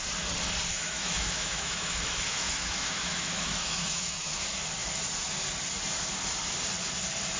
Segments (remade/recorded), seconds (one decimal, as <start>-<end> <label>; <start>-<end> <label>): 0.0-0.7 recorded; 0.7-4.3 remade; 4.3-7.4 recorded